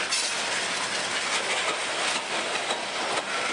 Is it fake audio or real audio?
real